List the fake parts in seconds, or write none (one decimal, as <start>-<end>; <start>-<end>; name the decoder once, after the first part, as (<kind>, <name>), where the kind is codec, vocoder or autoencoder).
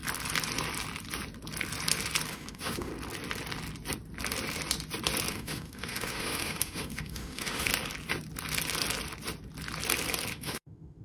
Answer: 2.3-2.9 (autoencoder, DAC-VAE); 5.3-7.7; 10.3-11.0